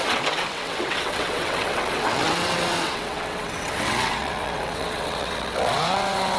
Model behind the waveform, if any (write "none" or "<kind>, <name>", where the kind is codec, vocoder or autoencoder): vocoder, WaveNeXt